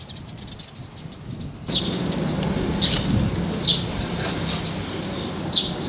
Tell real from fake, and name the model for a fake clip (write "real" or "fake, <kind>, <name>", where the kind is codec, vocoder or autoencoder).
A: real